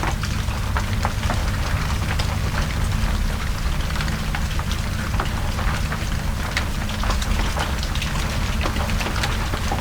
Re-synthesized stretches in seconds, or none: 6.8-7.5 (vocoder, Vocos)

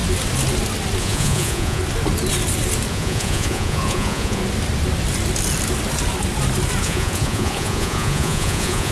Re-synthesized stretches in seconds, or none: 1.0-1.8 (vocoder, Vocos); 2.9-4.4; 6.8-8.9